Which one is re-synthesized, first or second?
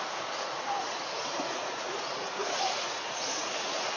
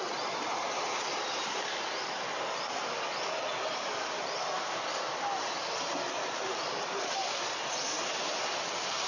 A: first